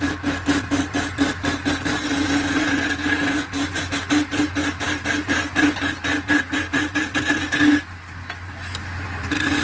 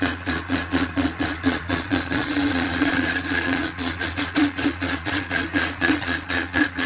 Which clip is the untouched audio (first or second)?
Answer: first